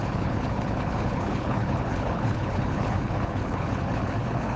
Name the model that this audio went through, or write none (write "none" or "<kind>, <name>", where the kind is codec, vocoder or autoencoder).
codec, HILCodec